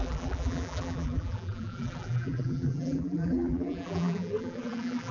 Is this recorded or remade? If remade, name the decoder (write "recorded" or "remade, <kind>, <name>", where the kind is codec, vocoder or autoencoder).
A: remade, vocoder, BigVGAN v2